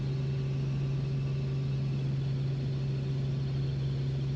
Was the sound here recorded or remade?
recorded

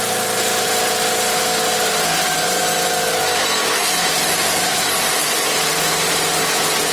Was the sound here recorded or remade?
recorded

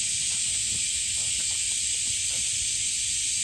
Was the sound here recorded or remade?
recorded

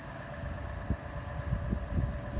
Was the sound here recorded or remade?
recorded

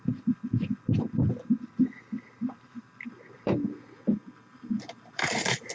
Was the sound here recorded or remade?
remade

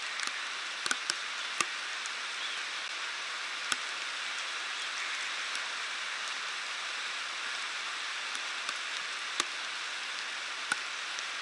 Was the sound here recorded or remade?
recorded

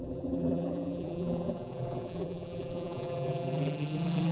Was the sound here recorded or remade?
remade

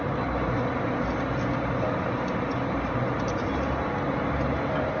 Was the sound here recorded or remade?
recorded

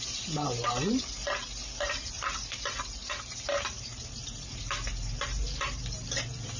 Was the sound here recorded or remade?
remade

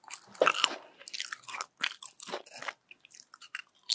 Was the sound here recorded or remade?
recorded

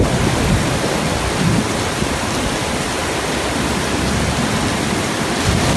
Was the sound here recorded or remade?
remade